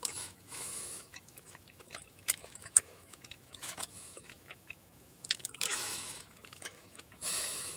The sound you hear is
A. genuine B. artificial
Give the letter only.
B